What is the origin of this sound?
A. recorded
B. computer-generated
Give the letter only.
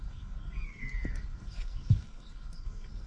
B